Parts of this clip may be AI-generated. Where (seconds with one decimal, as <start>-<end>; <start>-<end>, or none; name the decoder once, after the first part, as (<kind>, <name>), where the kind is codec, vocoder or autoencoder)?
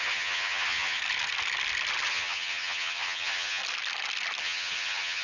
0.0-1.0 (vocoder, HiFi-GAN); 2.1-3.6; 4.4-5.2